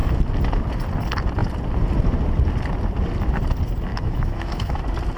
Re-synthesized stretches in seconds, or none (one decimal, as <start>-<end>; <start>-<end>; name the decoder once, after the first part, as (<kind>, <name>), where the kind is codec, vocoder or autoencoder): 3.9-4.8 (autoencoder, DAC-VAE)